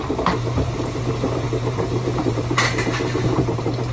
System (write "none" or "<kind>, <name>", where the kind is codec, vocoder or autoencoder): vocoder, BigVGAN v2